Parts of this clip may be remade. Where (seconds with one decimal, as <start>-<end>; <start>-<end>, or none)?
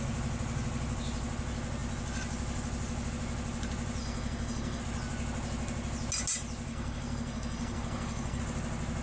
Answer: 4.0-4.8; 6.7-8.4